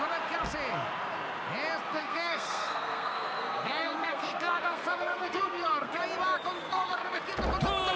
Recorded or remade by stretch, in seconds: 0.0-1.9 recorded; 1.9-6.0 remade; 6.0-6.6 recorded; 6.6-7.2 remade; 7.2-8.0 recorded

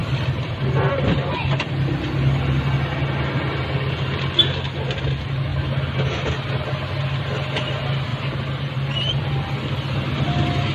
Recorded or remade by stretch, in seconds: 0.0-8.1 recorded; 8.1-9.3 remade; 9.3-10.7 recorded

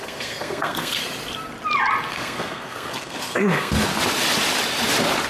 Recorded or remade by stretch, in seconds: 0.0-1.0 remade; 1.0-2.1 recorded; 2.1-3.9 remade; 3.9-5.3 recorded

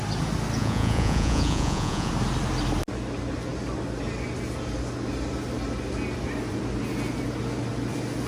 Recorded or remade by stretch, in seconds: 0.0-0.6 recorded; 0.6-2.1 remade; 2.1-8.3 recorded

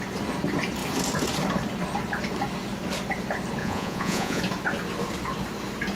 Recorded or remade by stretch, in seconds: 0.0-3.6 recorded; 3.6-4.4 remade; 4.4-5.9 recorded

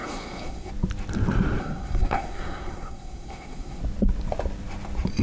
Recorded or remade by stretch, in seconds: 0.0-0.7 remade; 0.7-1.6 recorded; 1.6-3.8 remade; 3.8-5.2 recorded

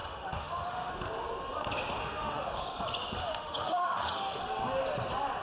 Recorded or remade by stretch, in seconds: 0.0-0.9 remade; 0.9-2.0 recorded; 2.0-2.6 remade; 2.6-3.2 recorded; 3.2-4.4 remade; 4.4-5.4 recorded

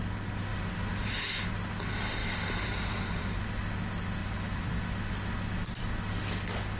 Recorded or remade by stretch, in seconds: 0.0-0.5 recorded; 0.5-1.2 remade; 1.2-2.2 recorded; 2.2-3.4 remade; 3.4-4.2 recorded; 4.2-4.8 remade; 4.8-6.8 recorded